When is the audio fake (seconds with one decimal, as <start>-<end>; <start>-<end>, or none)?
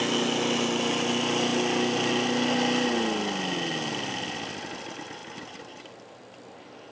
none